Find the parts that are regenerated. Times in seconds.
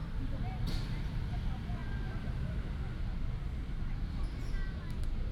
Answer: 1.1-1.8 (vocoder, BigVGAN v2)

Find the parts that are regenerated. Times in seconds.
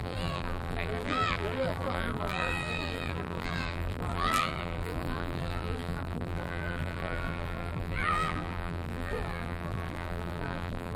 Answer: 0.0-11.0 (vocoder, BigVGAN v2)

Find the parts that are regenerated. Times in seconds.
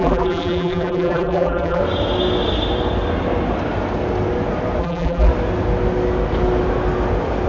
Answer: 0.0-1.8 (vocoder, BigVGAN v2); 4.8-5.3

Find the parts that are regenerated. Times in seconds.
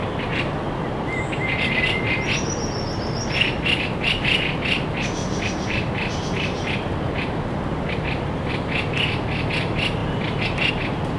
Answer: 5.2-8.5 (vocoder, BigVGAN v2); 10.0-10.7